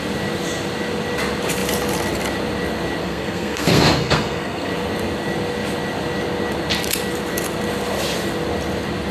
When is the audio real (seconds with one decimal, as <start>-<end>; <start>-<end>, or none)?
0.0-3.0; 4.7-9.1